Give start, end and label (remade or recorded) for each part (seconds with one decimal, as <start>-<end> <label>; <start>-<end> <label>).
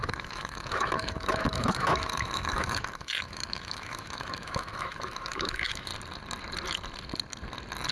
0.0-5.9 remade; 5.9-7.9 recorded